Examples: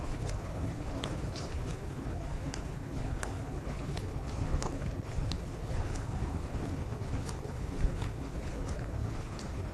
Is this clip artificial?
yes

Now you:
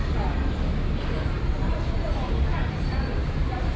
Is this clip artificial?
no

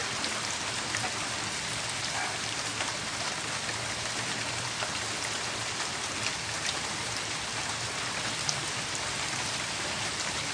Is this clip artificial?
no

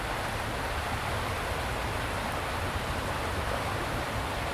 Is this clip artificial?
no